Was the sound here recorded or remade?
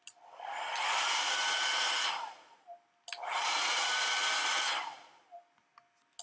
recorded